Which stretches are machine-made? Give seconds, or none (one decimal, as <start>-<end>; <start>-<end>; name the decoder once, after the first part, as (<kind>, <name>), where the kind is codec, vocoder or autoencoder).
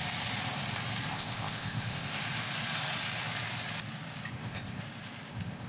1.1-2.2 (codec, ZipCodec); 4.3-4.8; 5.3-5.7